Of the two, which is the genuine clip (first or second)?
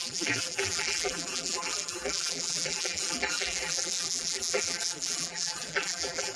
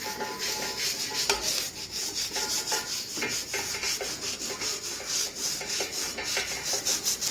second